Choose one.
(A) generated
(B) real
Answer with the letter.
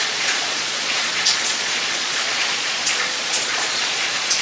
A